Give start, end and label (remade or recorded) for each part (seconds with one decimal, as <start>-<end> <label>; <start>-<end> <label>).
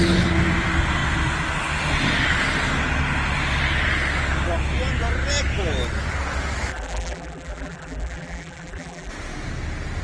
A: 0.0-6.7 recorded; 6.7-9.1 remade; 9.1-10.0 recorded